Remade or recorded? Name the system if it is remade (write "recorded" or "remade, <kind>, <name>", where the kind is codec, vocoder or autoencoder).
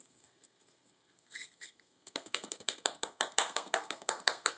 remade, codec, SNAC